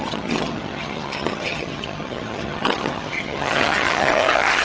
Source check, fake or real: fake